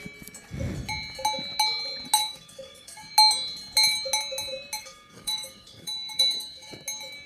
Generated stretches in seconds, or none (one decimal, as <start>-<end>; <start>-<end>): 2.3-3.1; 4.8-6.7